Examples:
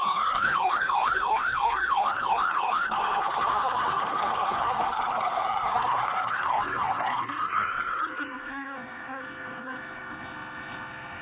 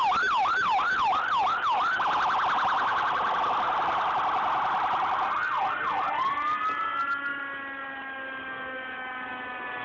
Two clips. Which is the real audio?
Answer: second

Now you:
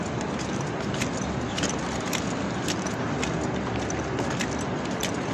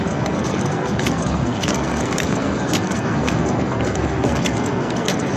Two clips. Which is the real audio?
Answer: first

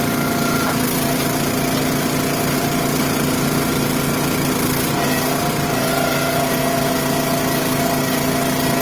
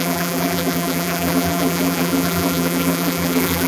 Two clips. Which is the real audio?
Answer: first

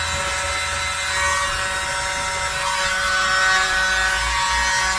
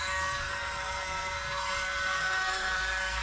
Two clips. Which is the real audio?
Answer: first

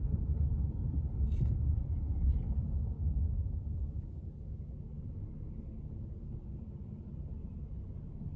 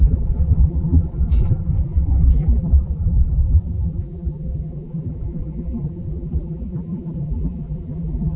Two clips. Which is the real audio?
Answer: first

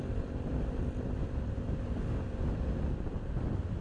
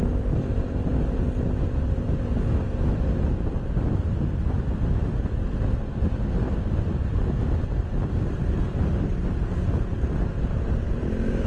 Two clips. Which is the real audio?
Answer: second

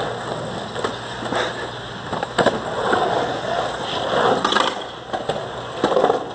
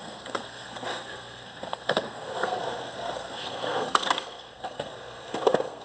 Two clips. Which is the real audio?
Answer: first